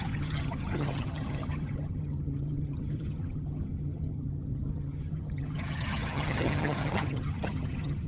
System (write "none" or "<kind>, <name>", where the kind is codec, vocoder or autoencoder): vocoder, HiFi-GAN